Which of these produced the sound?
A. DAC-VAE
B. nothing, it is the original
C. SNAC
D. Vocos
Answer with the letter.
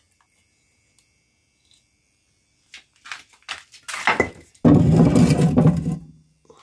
B